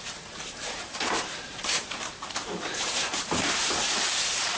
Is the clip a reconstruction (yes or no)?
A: yes